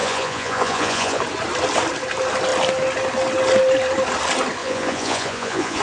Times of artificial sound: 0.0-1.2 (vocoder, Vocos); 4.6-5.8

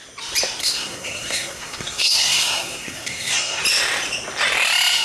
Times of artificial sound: 0.6-3.6 (codec, SNAC)

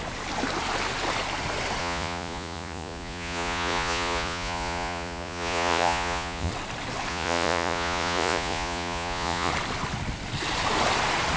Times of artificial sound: 1.8-6.5 (vocoder, Vocos); 7.1-9.5

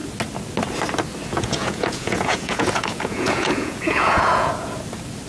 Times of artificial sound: 1.3-4.5 (vocoder, Vocos)

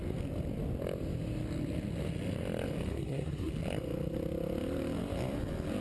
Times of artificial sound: 2.9-3.5 (codec, SNAC)

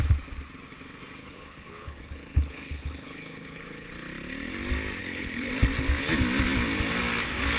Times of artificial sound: 1.2-3.9 (codec, HILCodec); 5.0-5.5

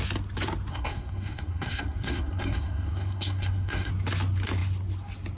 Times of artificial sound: 0.7-3.9 (codec, SNAC)

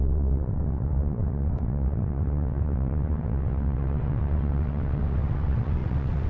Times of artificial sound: 0.0-6.3 (vocoder, WaveNeXt)